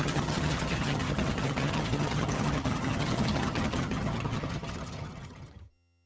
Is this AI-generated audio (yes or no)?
yes